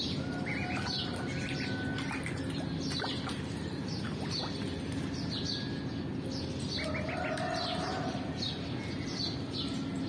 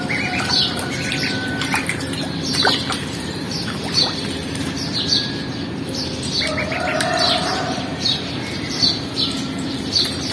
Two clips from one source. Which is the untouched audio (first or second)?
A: first